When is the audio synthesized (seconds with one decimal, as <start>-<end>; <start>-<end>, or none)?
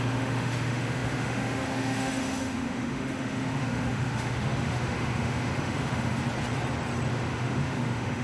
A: 0.0-6.2; 7.1-8.2